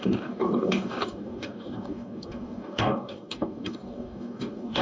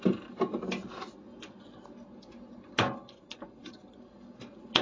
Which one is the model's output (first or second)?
first